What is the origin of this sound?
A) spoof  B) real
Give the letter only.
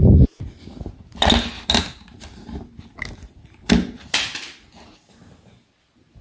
B